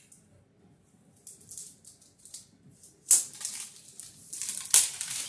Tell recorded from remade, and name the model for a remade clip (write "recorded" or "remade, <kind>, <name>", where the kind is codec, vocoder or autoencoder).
recorded